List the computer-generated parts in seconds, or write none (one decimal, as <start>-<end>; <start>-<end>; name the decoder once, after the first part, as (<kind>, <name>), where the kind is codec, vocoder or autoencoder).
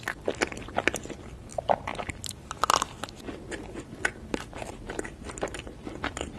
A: none